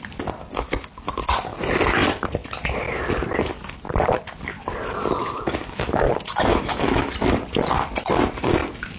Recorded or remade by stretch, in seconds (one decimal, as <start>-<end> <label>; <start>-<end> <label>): 0.0-5.2 recorded; 5.2-6.1 remade; 6.1-6.5 recorded; 6.5-7.1 remade; 7.1-9.0 recorded